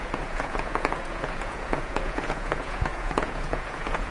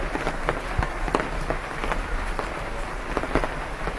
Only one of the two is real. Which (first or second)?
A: second